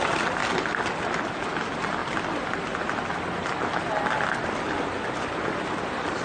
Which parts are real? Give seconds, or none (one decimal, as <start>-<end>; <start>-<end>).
0.0-6.2